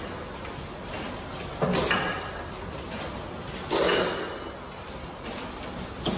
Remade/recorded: recorded